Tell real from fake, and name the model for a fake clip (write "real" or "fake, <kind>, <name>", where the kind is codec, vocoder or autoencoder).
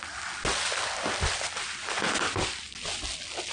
real